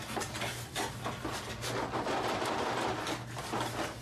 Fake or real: real